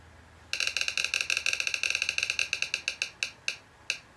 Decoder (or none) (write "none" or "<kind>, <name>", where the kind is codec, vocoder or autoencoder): none